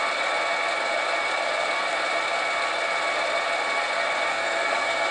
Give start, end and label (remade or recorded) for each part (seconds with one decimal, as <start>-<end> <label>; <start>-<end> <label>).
0.0-4.3 recorded; 4.3-5.1 remade